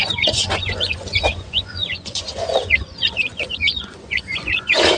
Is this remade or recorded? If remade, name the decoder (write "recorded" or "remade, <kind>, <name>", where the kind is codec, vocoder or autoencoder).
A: remade, vocoder, Vocos